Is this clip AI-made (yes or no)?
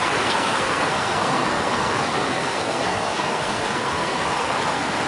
yes